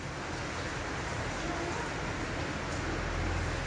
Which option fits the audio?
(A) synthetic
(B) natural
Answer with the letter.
B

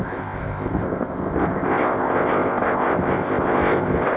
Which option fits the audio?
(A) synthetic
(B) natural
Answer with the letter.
A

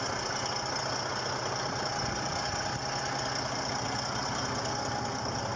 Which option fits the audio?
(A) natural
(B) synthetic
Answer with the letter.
A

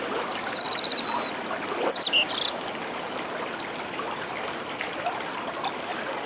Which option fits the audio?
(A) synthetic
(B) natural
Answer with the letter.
B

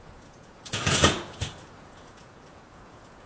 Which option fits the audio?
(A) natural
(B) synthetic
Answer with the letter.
B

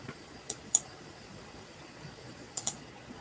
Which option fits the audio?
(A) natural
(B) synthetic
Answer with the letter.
B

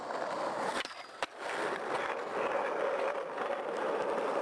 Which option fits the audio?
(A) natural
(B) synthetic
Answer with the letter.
A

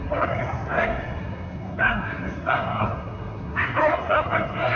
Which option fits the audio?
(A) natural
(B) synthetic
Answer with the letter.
B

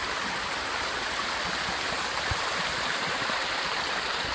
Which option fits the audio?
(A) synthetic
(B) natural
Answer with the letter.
B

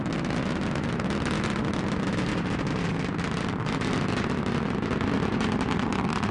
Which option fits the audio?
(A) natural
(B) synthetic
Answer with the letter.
A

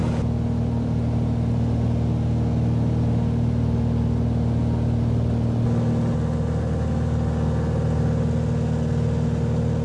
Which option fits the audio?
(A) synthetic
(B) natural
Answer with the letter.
B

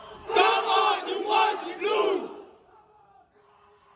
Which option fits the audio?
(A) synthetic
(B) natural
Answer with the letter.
A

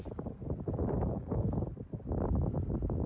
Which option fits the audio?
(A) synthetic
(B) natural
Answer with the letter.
B